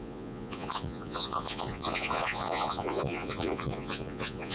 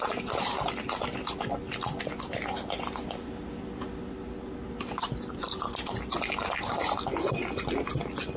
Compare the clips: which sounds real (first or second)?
second